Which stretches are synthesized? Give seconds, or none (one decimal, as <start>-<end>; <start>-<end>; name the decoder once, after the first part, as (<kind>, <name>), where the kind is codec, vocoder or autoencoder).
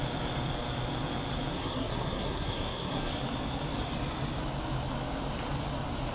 1.5-3.1 (codec, SNAC)